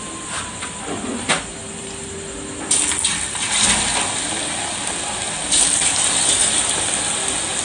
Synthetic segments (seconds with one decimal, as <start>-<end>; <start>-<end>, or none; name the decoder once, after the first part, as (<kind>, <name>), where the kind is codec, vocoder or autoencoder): 0.0-1.5 (vocoder, BigVGAN v2); 4.7-6.4